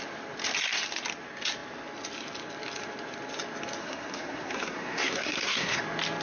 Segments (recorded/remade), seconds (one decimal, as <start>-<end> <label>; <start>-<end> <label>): 0.0-3.8 recorded; 3.8-5.8 remade; 5.8-6.2 recorded